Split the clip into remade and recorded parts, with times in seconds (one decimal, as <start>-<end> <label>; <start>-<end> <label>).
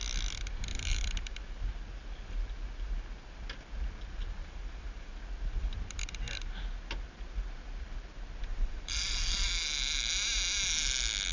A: 0.0-0.7 recorded; 0.7-1.4 remade; 1.4-4.4 recorded; 4.4-5.1 remade; 5.1-8.5 recorded; 8.5-9.5 remade; 9.5-11.3 recorded